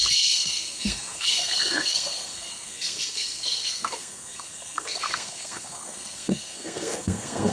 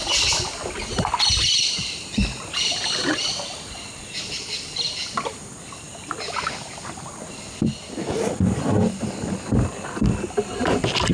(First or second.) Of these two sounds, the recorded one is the second